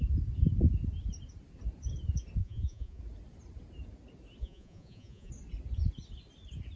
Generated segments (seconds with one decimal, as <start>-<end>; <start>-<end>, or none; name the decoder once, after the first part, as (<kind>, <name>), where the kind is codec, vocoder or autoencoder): 2.4-3.0 (vocoder, Vocos); 4.4-5.3